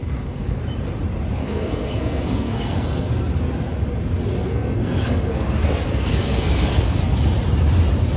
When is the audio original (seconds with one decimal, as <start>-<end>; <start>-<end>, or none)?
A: 0.6-1.4; 3.1-4.4; 7.0-8.2